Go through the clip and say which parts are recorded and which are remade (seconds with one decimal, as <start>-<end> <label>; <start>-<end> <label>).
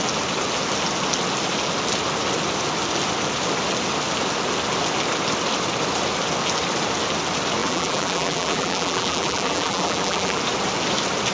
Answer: 0.0-7.6 recorded; 7.6-10.4 remade; 10.4-11.3 recorded